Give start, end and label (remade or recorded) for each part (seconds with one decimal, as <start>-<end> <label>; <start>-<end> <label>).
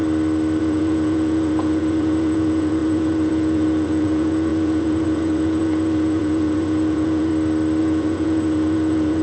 0.0-0.6 recorded; 0.6-7.3 remade; 7.3-7.8 recorded; 7.8-9.2 remade